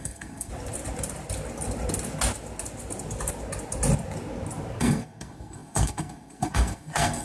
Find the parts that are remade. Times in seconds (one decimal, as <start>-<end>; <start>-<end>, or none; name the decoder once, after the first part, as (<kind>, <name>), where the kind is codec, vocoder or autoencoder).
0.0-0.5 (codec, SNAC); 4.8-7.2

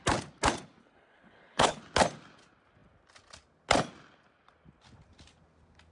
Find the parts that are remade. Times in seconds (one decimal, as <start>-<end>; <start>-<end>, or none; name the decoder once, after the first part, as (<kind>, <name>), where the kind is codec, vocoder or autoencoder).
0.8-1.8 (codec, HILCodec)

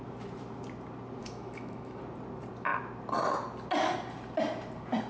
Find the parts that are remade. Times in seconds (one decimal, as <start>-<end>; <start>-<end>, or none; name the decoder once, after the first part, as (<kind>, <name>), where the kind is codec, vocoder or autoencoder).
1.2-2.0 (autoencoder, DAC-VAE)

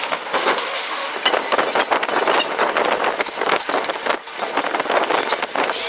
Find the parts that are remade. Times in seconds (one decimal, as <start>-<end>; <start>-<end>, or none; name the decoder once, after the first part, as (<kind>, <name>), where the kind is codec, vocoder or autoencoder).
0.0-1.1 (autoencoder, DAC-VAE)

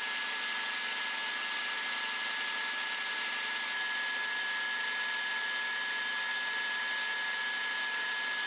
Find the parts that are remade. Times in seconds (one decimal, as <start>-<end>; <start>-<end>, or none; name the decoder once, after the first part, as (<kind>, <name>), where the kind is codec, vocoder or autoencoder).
none

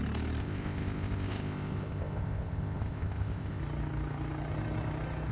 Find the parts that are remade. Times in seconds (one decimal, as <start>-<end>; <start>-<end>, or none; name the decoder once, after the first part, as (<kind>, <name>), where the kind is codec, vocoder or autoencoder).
0.4-3.6 (codec, ZipCodec)